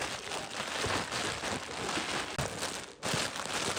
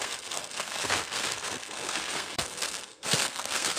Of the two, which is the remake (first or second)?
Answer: second